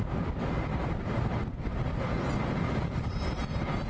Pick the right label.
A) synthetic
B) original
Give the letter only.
B